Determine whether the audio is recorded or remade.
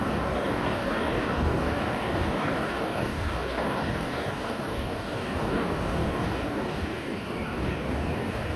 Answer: remade